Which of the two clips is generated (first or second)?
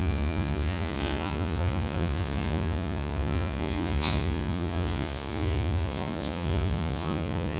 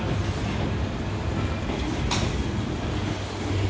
first